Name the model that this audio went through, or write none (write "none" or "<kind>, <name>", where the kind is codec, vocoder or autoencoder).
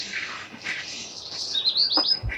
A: none